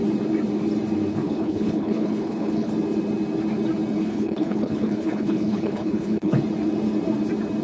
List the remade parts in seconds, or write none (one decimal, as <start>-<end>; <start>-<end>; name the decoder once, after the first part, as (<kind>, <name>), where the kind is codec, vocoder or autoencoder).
1.1-2.7 (codec, HILCodec); 4.0-6.4